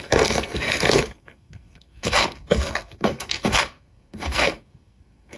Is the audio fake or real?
fake